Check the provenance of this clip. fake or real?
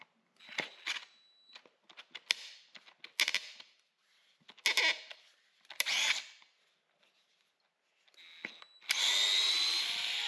real